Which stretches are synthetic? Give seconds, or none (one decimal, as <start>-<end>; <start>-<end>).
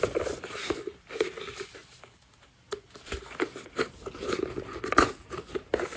none